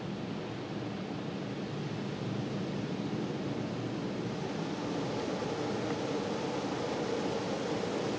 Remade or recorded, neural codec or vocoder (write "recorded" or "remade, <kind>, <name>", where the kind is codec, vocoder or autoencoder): recorded